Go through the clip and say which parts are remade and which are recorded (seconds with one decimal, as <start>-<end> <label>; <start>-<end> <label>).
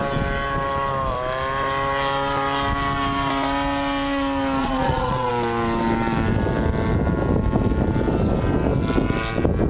0.0-4.6 recorded; 4.6-5.3 remade; 5.3-9.7 recorded